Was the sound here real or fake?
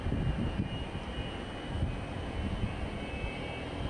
real